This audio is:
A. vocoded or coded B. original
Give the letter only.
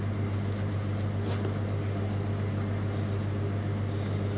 B